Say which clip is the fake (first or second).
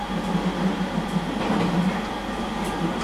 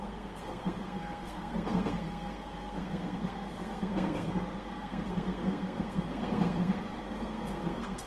second